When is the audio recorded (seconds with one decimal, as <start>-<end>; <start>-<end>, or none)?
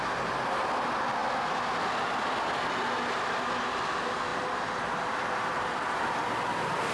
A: 0.0-6.9